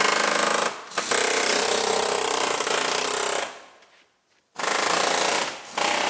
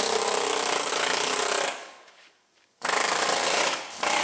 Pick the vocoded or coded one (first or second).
second